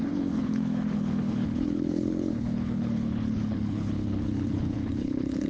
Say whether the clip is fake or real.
fake